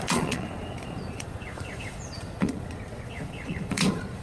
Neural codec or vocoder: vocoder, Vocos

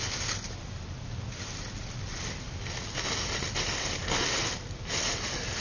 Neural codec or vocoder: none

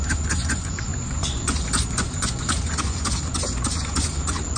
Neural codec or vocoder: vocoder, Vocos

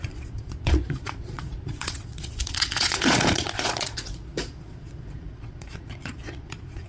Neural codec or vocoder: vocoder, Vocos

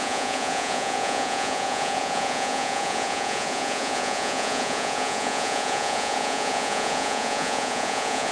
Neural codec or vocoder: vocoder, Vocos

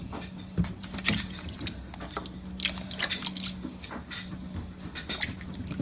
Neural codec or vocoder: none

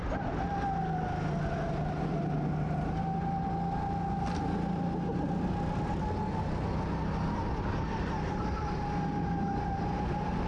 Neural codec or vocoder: none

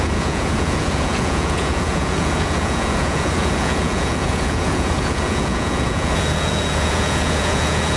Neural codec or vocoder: vocoder, Vocos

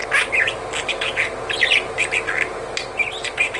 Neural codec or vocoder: none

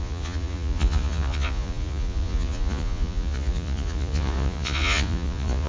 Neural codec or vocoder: vocoder, Vocos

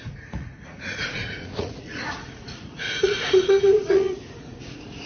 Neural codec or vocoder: vocoder, Vocos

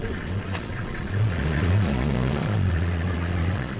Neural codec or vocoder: vocoder, Vocos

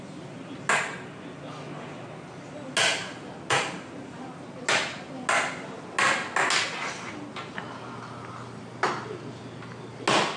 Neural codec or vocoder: none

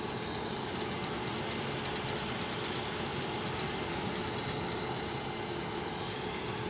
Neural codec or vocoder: none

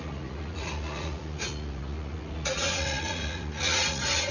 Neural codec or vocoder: vocoder, Vocos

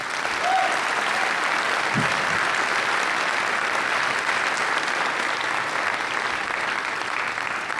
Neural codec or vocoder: none